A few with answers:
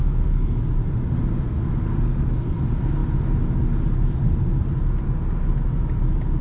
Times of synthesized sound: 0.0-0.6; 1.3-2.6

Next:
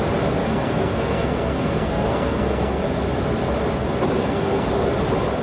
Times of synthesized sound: 0.4-2.8; 4.2-4.7